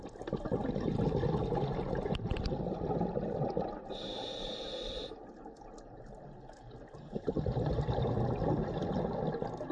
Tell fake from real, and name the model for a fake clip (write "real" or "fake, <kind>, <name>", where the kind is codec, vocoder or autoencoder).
real